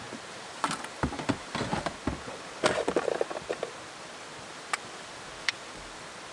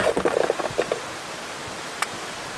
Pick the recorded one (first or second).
second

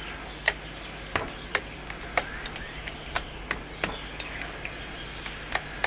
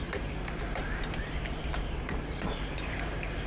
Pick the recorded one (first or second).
first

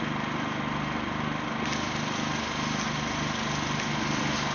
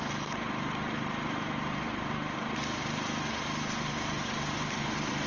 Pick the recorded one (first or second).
first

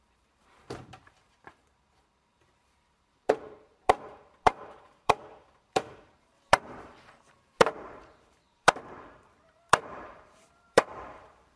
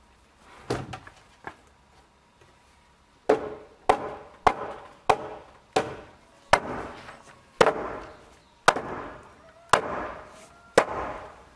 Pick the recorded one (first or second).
second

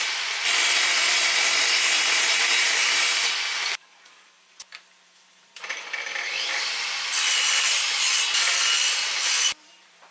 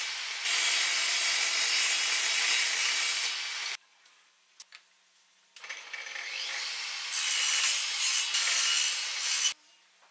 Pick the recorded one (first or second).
second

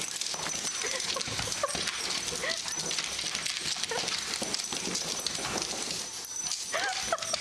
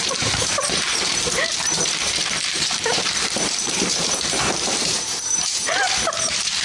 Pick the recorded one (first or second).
first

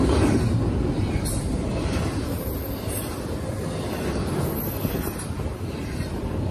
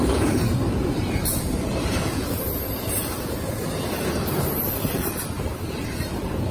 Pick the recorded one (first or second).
first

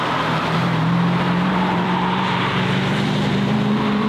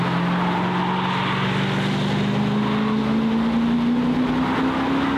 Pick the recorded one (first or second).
second